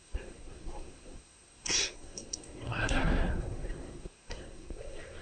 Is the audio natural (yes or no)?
no